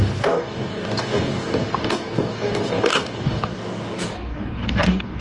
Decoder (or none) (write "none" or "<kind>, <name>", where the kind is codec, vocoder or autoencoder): codec, DAC